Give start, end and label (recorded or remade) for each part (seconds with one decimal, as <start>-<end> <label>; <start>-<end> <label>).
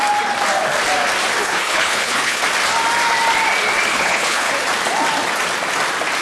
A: 0.0-1.4 recorded; 1.4-2.4 remade; 2.4-3.9 recorded; 3.9-4.5 remade; 4.5-6.2 recorded